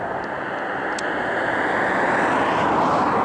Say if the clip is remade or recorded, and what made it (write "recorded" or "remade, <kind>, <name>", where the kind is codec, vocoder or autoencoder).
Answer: recorded